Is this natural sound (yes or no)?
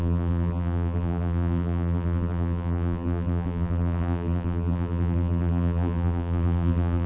no